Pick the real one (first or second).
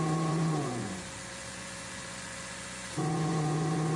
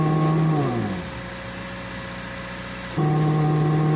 second